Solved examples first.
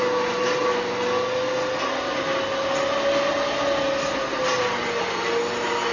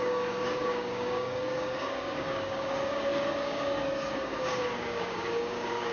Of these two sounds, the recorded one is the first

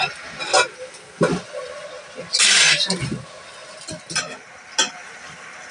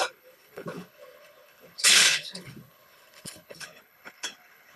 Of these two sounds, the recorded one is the first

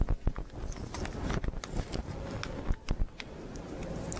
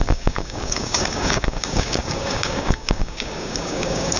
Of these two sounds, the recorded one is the first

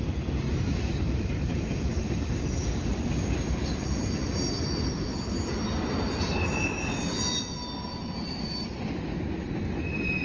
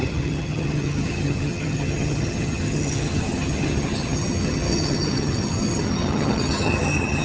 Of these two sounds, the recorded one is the first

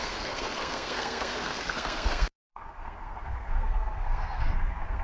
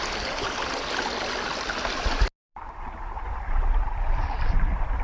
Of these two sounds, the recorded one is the second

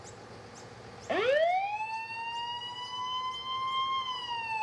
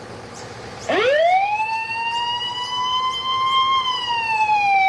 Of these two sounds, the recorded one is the first